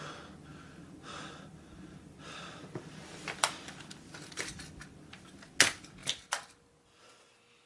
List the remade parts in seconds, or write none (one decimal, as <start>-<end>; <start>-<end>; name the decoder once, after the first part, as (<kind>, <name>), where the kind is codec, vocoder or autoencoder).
0.5-5.1 (vocoder, BigVGAN v2)